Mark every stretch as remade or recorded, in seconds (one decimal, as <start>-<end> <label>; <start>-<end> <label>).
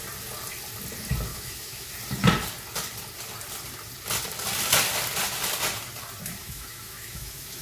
0.0-1.3 recorded; 1.3-1.9 remade; 1.9-6.4 recorded; 6.4-7.6 remade